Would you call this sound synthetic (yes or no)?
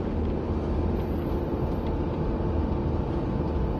no